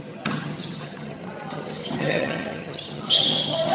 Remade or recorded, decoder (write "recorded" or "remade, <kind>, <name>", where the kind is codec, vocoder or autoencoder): remade, vocoder, HiFi-GAN